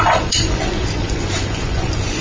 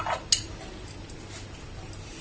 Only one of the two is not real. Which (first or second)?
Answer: first